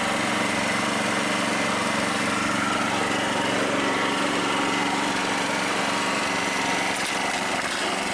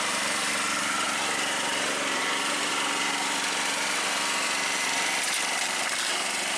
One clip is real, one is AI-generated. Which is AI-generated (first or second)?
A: second